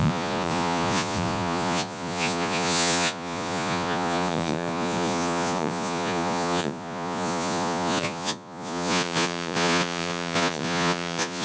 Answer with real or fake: fake